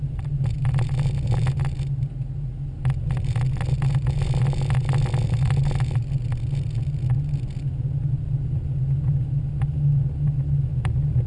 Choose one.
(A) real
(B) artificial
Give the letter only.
A